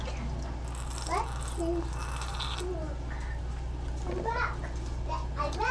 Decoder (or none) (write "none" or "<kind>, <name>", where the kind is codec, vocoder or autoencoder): none